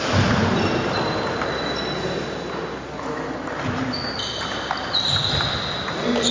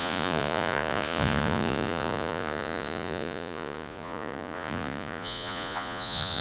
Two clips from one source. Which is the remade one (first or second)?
second